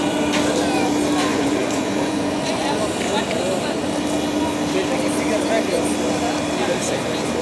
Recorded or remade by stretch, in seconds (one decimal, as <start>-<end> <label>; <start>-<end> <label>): 0.0-1.3 recorded; 1.3-2.8 remade; 2.8-7.4 recorded